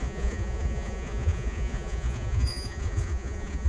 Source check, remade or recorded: remade